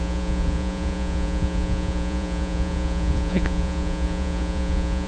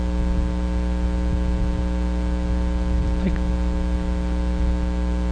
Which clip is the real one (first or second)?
second